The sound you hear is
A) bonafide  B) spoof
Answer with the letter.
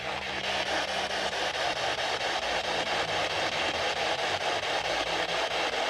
A